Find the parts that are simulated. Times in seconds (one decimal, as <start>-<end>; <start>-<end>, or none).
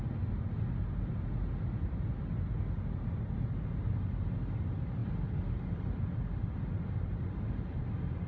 none